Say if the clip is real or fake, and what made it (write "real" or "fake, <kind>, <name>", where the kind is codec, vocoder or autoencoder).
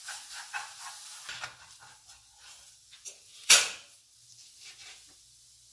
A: real